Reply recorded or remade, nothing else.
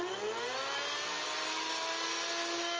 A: recorded